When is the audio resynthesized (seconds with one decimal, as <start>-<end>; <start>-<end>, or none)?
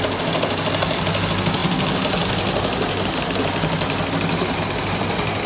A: none